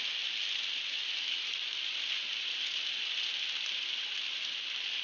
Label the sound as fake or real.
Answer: real